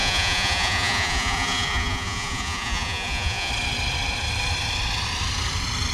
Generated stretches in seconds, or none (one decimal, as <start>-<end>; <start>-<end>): 0.0-3.5